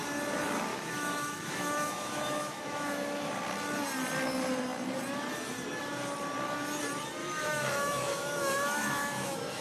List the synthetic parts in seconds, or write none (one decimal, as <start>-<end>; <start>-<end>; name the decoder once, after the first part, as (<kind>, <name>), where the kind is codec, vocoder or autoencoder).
0.7-3.3 (autoencoder, DAC-VAE); 7.2-9.6